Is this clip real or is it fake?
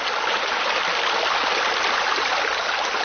real